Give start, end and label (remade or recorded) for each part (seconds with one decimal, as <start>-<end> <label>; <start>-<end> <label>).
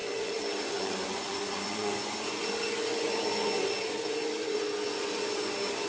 0.0-5.9 remade